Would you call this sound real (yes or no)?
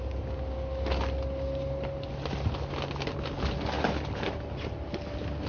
yes